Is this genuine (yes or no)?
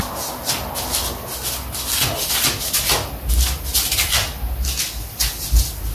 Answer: yes